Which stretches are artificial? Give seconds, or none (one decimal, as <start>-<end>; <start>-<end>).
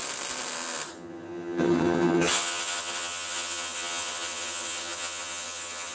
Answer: 0.9-5.9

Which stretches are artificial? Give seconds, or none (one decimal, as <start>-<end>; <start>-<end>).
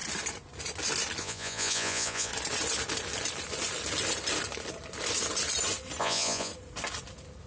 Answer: 1.2-2.3; 6.0-6.5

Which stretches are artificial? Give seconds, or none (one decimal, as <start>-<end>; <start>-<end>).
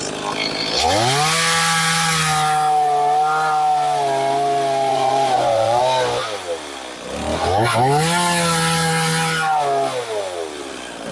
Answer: 4.9-5.8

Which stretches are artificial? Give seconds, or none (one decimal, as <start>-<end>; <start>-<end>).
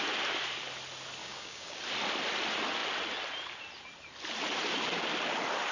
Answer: 1.2-1.8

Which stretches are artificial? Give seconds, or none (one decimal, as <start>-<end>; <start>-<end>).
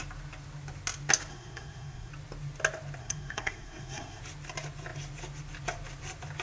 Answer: 1.3-2.1; 3.0-4.2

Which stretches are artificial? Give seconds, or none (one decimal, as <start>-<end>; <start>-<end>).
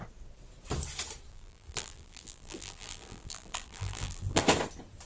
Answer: 1.3-4.4